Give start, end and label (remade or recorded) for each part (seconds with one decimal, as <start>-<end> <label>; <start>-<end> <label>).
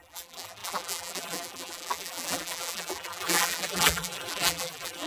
0.0-5.1 remade